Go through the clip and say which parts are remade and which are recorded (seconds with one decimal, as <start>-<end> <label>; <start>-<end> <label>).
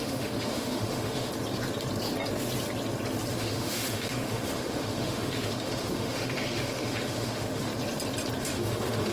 0.0-1.3 remade; 1.3-3.3 recorded; 3.3-7.7 remade; 7.7-8.4 recorded; 8.4-9.1 remade